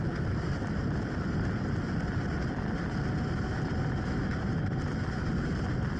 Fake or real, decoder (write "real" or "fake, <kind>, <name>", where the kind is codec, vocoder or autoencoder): real